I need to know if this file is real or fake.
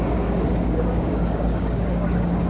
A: fake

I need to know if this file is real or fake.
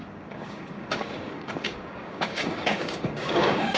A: fake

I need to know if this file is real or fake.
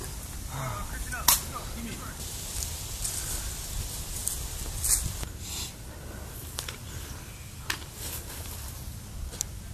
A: real